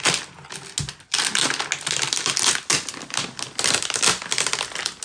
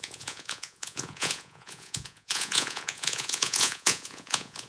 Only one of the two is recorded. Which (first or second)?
first